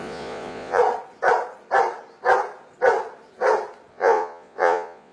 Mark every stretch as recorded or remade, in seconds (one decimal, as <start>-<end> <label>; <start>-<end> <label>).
0.0-0.8 remade; 0.8-3.9 recorded; 3.9-5.1 remade